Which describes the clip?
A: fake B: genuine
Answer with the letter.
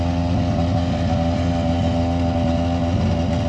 B